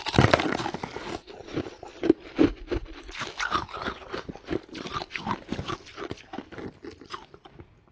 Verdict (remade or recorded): recorded